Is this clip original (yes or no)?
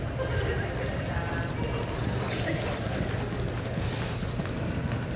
yes